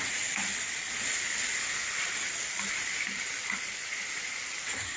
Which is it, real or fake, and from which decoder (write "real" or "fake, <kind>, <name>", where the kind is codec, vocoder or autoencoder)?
real